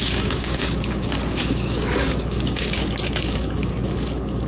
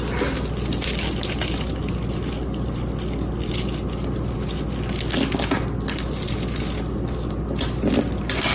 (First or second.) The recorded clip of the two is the second